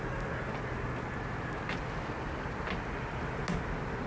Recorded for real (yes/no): yes